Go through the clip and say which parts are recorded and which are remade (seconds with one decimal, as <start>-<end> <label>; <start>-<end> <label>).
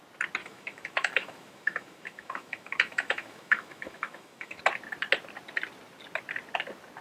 0.0-0.4 recorded; 0.4-4.6 remade; 4.6-7.0 recorded